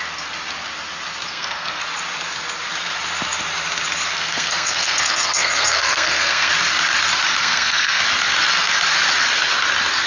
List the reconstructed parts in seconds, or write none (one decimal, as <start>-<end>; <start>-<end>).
1.3-1.8; 4.1-6.5; 7.4-8.0